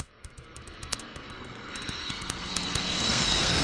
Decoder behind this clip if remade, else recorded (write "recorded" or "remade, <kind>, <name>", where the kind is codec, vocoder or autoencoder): remade, codec, SNAC